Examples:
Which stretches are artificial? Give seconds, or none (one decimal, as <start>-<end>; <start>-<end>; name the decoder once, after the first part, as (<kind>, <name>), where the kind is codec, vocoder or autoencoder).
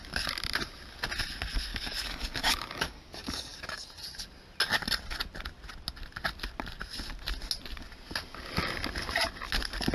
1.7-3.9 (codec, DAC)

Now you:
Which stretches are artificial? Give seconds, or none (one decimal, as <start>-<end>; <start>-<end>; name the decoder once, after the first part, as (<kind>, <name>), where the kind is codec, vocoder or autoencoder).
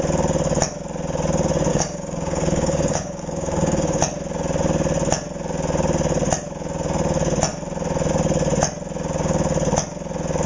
1.7-4.0 (codec, DAC)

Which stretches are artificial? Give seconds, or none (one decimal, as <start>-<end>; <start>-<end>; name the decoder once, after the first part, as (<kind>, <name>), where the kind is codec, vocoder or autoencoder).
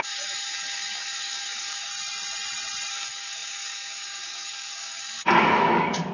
0.0-1.9 (codec, DAC); 2.9-6.1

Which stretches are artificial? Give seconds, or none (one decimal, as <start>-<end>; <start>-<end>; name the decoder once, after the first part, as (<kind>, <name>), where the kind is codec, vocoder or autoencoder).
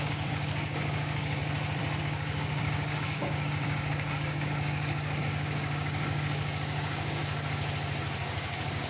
0.0-1.4 (codec, DAC); 2.0-7.2; 8.2-8.9